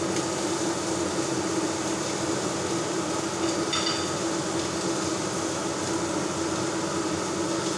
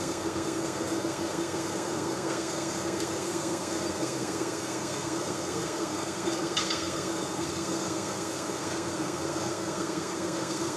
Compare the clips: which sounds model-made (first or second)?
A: second